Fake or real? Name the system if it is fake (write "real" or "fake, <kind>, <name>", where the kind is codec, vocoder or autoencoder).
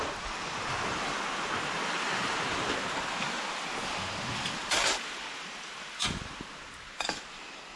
real